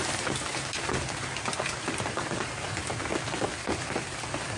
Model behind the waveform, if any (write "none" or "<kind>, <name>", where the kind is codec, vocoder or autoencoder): none